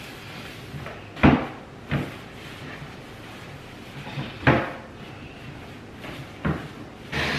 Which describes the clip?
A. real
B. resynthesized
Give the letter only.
A